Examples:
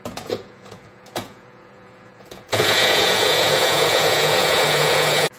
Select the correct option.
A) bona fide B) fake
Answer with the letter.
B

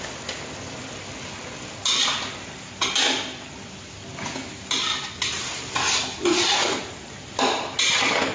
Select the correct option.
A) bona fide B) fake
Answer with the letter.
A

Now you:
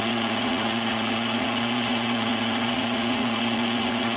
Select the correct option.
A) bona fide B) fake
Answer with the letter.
B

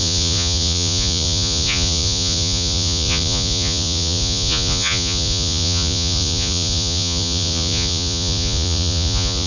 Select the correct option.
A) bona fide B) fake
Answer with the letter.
B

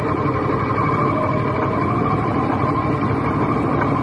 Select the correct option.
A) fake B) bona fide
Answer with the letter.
B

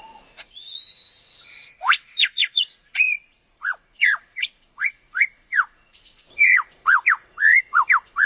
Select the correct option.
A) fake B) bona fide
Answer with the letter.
A